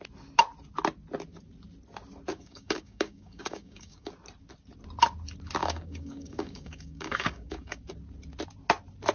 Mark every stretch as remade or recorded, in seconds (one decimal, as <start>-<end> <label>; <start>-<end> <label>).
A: 0.0-2.3 recorded; 2.3-4.1 remade; 4.1-5.6 recorded; 5.6-7.8 remade; 7.8-9.1 recorded